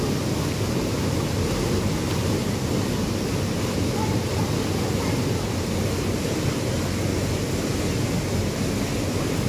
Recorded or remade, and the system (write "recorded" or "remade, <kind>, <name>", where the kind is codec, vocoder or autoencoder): recorded